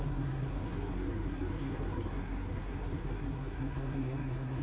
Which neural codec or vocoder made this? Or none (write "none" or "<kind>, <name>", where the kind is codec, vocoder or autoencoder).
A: codec, SNAC